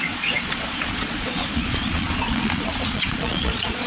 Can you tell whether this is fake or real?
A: fake